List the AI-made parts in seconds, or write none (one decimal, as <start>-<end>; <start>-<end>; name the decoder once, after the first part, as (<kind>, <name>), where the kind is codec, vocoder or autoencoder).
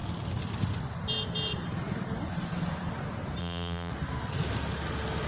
3.4-3.9 (vocoder, BigVGAN v2)